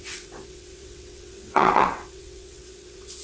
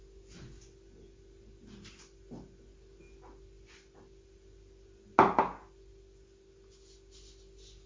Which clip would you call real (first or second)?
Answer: second